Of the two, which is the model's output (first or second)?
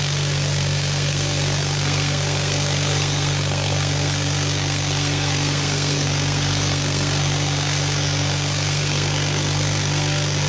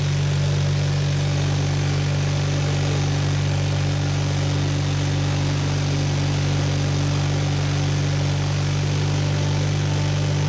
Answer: first